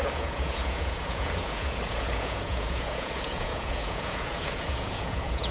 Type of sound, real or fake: fake